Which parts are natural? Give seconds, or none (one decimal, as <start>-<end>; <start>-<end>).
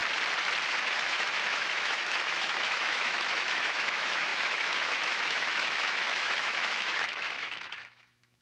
0.0-0.7